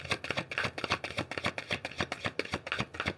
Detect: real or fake real